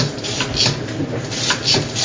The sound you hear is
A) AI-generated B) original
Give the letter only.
B